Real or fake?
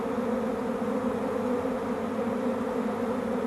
real